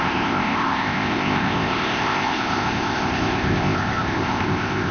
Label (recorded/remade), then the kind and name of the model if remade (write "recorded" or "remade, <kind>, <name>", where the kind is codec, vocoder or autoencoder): remade, codec, ZipCodec